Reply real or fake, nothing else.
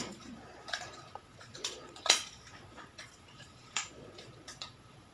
fake